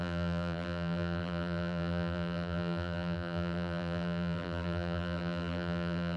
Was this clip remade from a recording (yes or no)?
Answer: yes